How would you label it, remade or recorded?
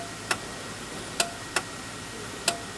recorded